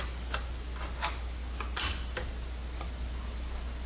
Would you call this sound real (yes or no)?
yes